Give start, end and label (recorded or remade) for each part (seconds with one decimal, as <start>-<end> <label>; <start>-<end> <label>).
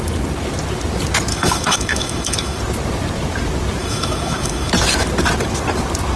0.0-1.3 recorded; 1.3-2.6 remade; 2.6-3.8 recorded; 3.8-4.7 remade; 4.7-6.2 recorded